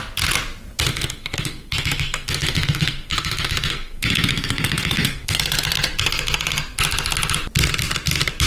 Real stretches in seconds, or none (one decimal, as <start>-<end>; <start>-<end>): 0.0-0.9; 5.4-8.5